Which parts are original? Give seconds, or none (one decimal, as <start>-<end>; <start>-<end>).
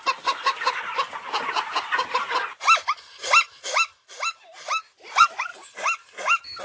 0.0-6.6